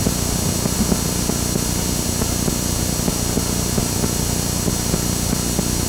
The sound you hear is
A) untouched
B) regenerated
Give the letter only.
A